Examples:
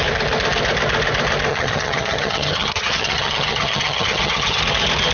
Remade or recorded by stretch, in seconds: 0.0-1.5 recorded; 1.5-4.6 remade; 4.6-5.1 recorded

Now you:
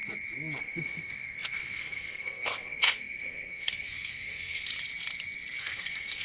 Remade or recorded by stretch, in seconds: 0.0-0.6 recorded; 0.6-4.7 remade; 4.7-5.6 recorded; 5.6-6.2 remade

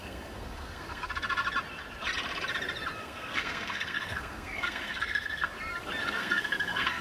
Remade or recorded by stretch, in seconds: 0.0-1.1 remade; 1.1-3.0 recorded; 3.0-5.5 remade; 5.5-6.0 recorded; 6.0-7.0 remade

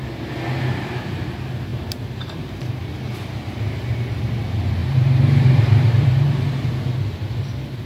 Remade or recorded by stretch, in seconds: 0.0-1.7 recorded; 1.7-4.2 remade; 4.2-4.8 recorded; 4.8-6.7 remade; 6.7-7.9 recorded

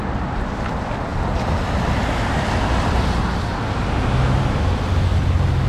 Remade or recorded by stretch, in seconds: 0.0-5.7 recorded

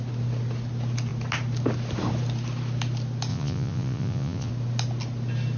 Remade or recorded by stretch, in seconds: 0.0-3.3 recorded; 3.3-4.5 remade; 4.5-5.6 recorded

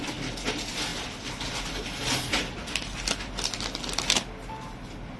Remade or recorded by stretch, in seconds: 0.0-5.2 recorded

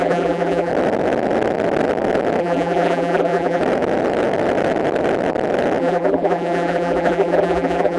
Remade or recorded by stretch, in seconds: 0.0-0.7 remade; 0.7-2.4 recorded; 2.4-3.6 remade; 3.6-5.8 recorded; 5.8-8.0 remade